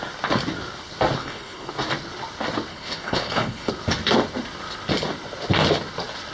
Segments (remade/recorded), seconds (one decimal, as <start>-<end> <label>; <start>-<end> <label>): 0.0-1.2 recorded; 1.2-1.7 remade; 1.7-2.7 recorded; 2.7-3.7 remade; 3.7-6.3 recorded